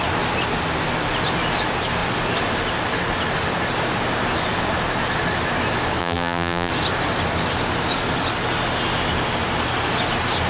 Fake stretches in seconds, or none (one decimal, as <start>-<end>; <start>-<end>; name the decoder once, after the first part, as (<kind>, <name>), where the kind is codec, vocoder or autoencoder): 6.0-6.7 (vocoder, BigVGAN v2)